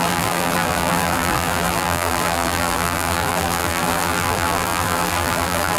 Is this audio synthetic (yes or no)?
yes